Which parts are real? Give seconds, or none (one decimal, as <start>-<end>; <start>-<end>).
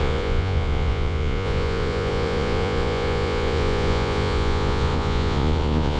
none